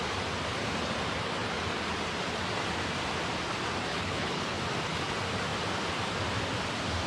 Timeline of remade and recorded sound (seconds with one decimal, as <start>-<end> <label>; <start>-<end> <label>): 0.0-3.9 recorded; 3.9-4.6 remade; 4.6-7.1 recorded